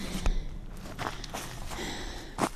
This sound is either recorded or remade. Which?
recorded